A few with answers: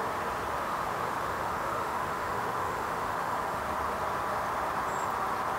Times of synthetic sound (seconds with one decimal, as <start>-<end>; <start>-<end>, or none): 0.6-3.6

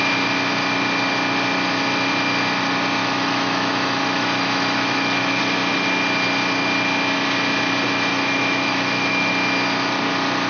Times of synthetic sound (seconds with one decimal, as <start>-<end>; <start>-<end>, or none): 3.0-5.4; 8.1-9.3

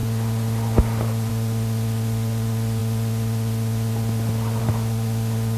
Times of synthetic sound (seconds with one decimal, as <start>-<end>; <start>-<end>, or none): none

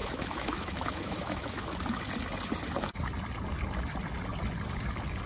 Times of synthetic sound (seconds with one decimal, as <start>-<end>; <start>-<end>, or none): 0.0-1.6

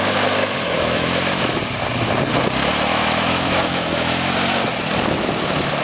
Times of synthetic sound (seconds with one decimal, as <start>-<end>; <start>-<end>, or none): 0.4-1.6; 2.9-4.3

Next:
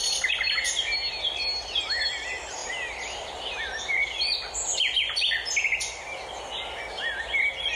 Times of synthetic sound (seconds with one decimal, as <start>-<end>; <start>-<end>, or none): none

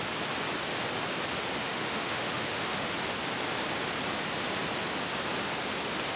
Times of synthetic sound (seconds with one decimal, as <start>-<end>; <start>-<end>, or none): 1.6-2.9